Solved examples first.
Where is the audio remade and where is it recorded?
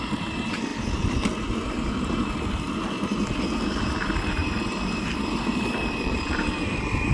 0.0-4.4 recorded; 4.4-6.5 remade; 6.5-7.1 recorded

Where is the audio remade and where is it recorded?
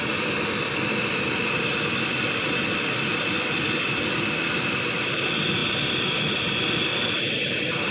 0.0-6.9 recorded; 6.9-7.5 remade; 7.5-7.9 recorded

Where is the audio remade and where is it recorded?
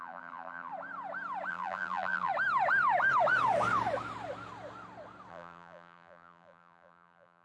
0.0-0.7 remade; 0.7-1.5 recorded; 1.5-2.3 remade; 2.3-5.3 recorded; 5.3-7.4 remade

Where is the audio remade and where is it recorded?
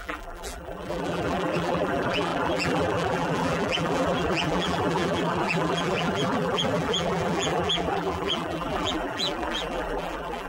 0.0-10.5 remade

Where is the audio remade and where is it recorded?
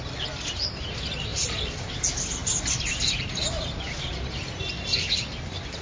0.0-1.3 recorded; 1.3-1.9 remade; 1.9-5.8 recorded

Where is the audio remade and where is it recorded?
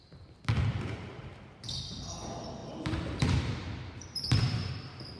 0.0-0.7 recorded; 0.7-1.2 remade; 1.2-2.6 recorded; 2.6-4.7 remade; 4.7-5.2 recorded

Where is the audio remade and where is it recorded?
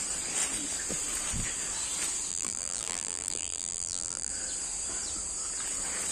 0.0-2.3 recorded; 2.3-4.3 remade; 4.3-6.1 recorded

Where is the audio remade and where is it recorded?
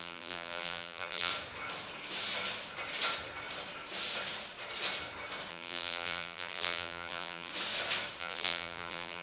0.0-1.3 remade; 1.3-5.5 recorded; 5.5-7.5 remade; 7.5-8.2 recorded; 8.2-9.2 remade